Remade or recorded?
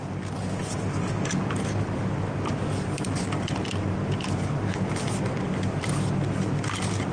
recorded